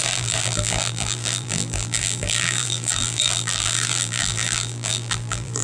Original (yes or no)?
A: no